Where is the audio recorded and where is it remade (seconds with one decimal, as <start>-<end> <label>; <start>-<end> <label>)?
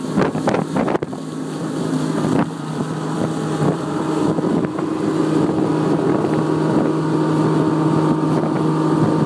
0.0-1.6 recorded; 1.6-5.2 remade; 5.2-9.3 recorded